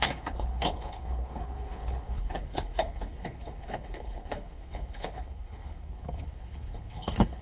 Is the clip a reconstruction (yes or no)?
yes